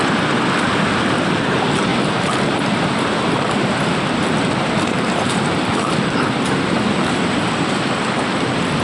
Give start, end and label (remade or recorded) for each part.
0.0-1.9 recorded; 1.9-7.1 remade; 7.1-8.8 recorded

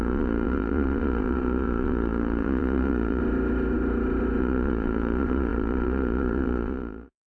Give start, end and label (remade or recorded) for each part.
0.0-3.2 remade; 3.2-4.4 recorded; 4.4-7.3 remade

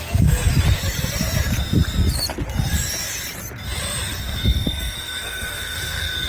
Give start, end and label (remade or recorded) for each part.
0.0-0.4 remade; 0.4-4.2 recorded; 4.2-6.3 remade

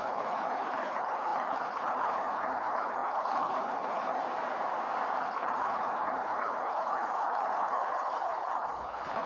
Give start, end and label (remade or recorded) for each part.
0.0-4.2 remade; 4.2-5.2 recorded; 5.2-9.3 remade

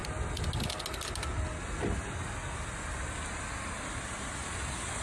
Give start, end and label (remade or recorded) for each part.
0.0-5.0 recorded